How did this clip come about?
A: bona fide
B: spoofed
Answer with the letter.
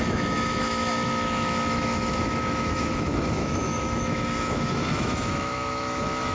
B